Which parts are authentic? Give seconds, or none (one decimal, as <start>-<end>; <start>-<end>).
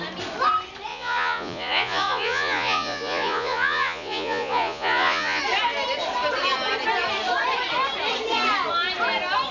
0.0-0.9; 5.4-9.5